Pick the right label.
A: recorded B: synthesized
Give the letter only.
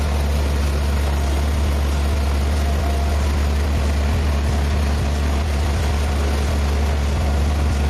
A